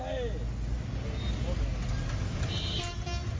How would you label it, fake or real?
real